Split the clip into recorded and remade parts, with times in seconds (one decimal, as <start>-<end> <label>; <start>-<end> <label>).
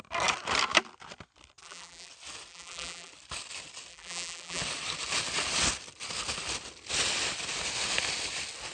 0.0-1.6 recorded; 1.6-2.1 remade; 2.1-2.5 recorded; 2.5-3.1 remade; 3.1-3.9 recorded; 3.9-4.6 remade; 4.6-8.7 recorded